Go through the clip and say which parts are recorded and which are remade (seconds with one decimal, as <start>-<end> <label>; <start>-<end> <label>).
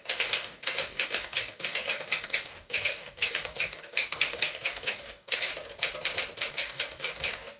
0.0-5.5 remade; 5.5-6.5 recorded; 6.5-7.6 remade